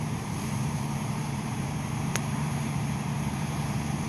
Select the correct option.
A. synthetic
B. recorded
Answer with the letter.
A